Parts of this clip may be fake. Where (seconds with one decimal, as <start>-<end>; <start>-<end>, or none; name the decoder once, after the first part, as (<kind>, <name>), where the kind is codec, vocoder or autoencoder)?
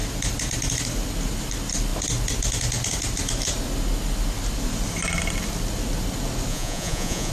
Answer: 6.5-7.3 (vocoder, Vocos)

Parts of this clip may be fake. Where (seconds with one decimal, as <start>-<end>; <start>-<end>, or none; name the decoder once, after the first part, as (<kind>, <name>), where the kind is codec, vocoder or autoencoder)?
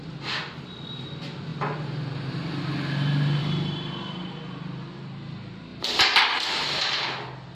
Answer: 5.7-7.0 (vocoder, BigVGAN v2)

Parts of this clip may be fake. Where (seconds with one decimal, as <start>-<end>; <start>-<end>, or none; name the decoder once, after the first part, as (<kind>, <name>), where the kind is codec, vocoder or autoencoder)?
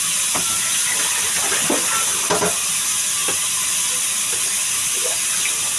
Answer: none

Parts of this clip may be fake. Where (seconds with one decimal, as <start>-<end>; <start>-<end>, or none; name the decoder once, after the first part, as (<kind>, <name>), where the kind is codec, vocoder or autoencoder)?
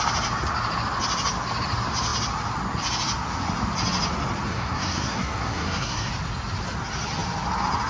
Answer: 4.5-6.1 (codec, SNAC)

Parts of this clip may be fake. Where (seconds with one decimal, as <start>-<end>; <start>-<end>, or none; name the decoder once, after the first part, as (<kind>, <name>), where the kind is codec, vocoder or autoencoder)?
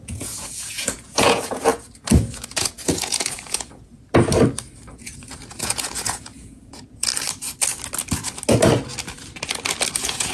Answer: 0.0-1.7 (vocoder, Vocos); 2.5-3.9; 4.9-7.1; 9.9-10.3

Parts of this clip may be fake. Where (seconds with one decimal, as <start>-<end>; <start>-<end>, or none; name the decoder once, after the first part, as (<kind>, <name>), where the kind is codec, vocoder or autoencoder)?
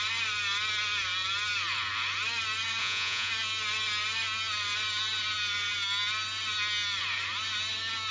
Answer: 2.8-3.3 (vocoder, Vocos)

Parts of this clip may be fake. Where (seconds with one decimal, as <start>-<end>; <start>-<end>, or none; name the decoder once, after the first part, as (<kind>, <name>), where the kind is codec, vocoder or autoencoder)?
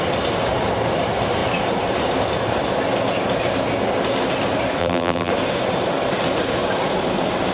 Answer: 4.8-5.3 (vocoder, BigVGAN v2)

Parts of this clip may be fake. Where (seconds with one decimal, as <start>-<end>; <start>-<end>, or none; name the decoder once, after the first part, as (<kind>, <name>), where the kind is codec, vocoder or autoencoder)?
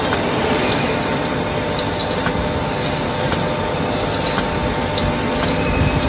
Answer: none